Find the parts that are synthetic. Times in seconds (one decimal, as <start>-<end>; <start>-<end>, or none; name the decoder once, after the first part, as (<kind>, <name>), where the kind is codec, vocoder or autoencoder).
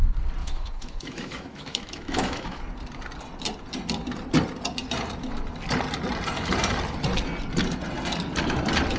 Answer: 0.4-2.6 (autoencoder, DAC-VAE)